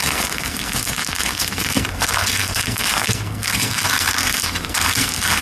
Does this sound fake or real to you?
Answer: fake